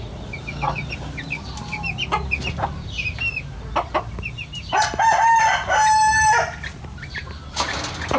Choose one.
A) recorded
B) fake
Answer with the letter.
A